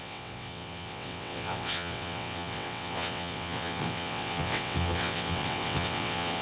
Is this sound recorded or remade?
remade